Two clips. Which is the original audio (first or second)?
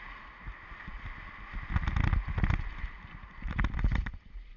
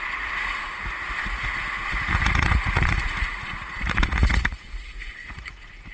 first